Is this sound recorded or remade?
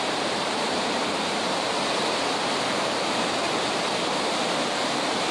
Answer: remade